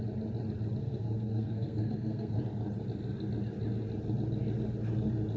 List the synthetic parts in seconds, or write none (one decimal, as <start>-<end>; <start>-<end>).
0.8-2.4